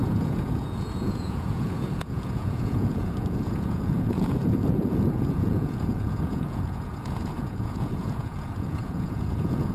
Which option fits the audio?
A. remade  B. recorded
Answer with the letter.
A